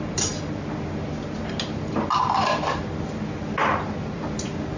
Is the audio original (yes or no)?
yes